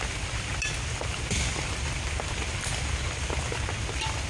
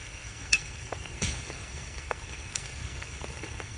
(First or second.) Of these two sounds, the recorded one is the first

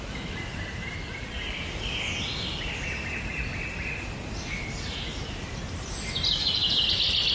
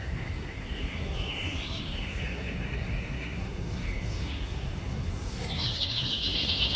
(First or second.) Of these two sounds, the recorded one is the first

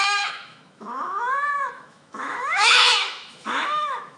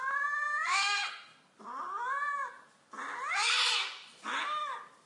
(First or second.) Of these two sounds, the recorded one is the second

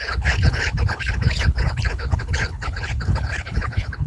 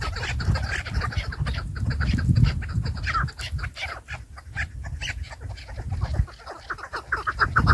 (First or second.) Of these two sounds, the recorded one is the second